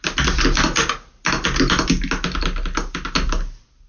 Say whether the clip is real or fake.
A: real